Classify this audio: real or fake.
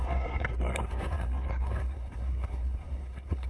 fake